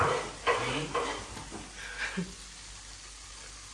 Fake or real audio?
real